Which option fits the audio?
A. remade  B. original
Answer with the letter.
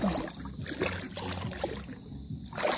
B